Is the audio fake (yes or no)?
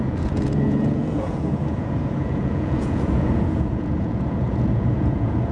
yes